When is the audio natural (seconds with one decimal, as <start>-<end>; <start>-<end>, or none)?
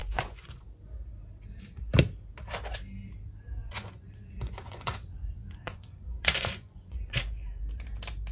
0.6-3.6; 7.6-8.3